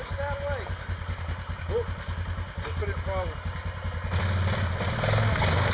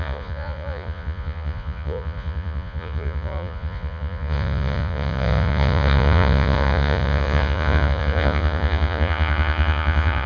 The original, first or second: first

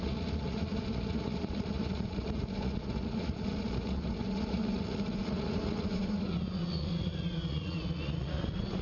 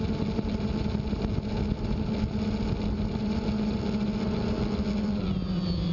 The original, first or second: second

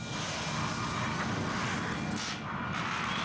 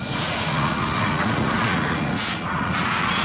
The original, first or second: first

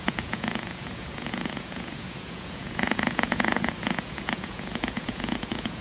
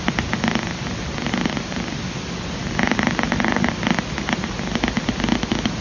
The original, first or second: second